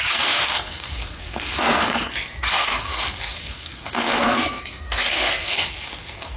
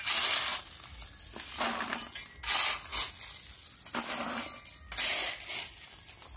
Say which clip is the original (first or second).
second